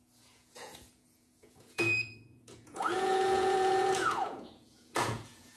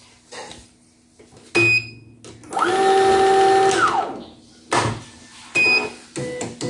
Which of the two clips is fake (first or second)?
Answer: first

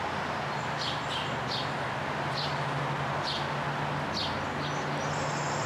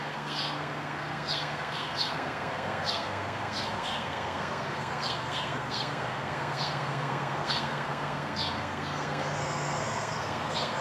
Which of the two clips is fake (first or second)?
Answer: second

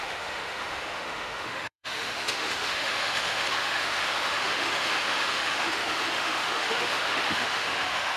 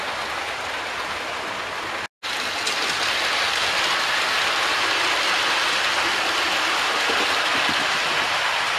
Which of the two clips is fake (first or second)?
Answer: first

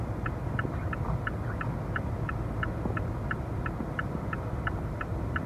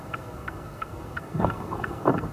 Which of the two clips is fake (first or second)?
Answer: second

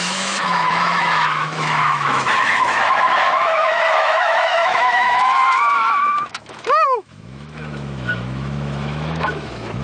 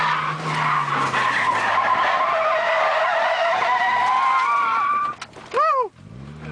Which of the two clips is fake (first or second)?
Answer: first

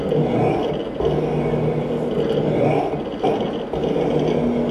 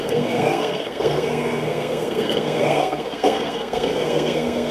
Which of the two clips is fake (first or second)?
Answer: second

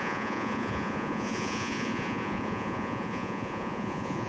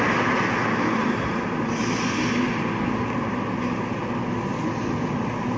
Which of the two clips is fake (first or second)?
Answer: first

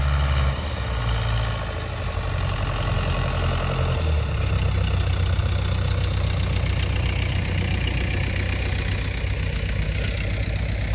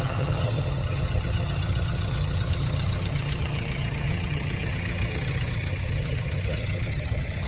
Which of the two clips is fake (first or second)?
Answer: second